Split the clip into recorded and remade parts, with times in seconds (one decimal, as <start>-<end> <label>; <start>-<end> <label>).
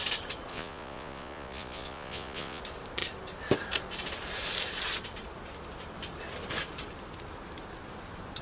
0.0-0.5 recorded; 0.5-2.6 remade; 2.6-8.4 recorded